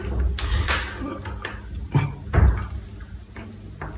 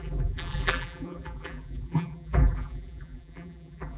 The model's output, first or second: second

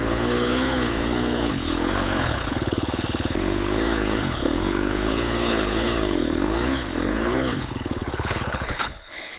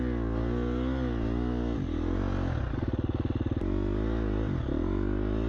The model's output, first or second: first